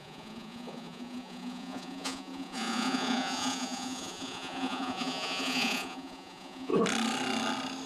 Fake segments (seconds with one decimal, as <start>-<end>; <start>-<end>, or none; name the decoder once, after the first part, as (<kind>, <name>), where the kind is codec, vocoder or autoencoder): 0.0-6.7 (vocoder, Vocos)